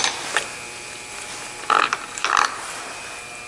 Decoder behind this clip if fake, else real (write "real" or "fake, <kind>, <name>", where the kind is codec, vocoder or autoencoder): real